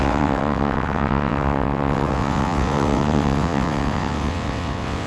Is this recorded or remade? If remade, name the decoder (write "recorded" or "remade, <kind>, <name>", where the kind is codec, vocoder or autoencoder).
remade, vocoder, WaveNeXt